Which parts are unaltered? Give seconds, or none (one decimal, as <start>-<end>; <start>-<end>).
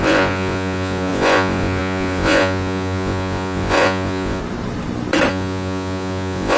4.4-5.3